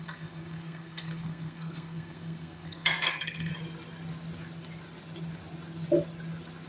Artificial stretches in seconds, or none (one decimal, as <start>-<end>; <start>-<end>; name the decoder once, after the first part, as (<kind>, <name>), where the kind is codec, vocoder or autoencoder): 0.0-3.5 (codec, SNAC)